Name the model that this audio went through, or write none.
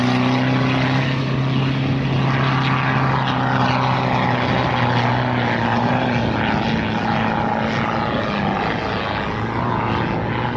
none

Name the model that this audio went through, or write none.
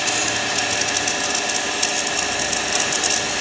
none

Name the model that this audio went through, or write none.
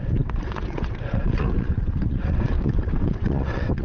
vocoder, WaveNeXt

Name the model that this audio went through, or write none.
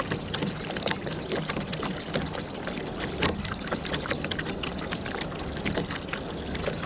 none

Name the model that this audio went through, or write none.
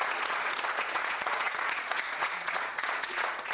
vocoder, Vocos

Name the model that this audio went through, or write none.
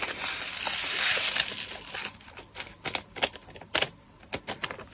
none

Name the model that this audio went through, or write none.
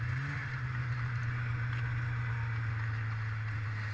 none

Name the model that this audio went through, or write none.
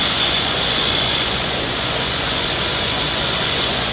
vocoder, Vocos